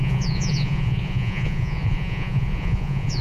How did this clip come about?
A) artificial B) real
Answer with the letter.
A